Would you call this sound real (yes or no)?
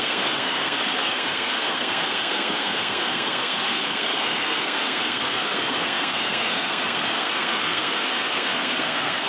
no